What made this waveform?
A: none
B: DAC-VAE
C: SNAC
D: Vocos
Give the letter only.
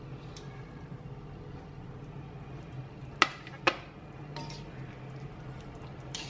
A